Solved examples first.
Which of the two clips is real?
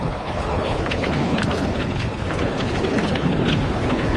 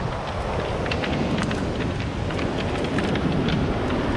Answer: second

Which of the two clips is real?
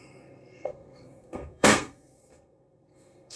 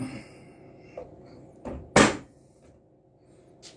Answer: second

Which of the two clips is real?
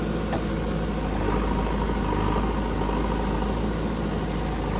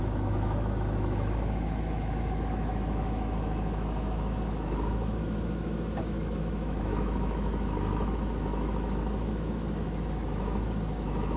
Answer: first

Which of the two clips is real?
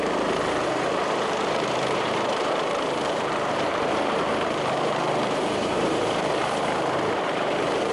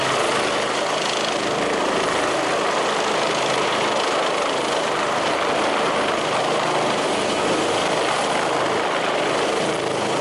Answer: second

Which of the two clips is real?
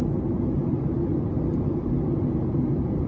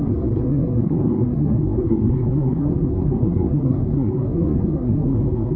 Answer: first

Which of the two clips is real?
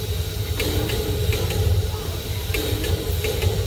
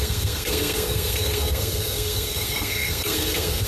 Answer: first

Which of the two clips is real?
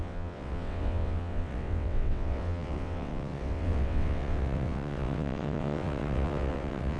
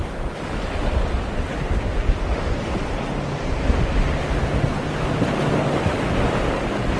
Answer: second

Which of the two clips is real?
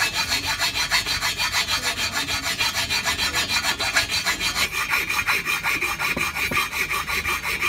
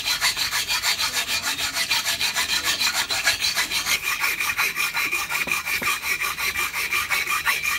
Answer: first